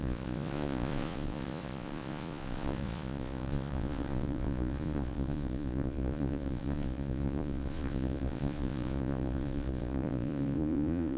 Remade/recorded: remade